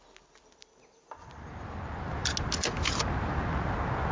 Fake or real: real